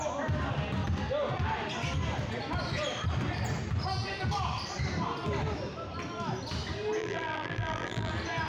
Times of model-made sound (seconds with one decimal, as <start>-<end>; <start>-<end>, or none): 7.0-8.1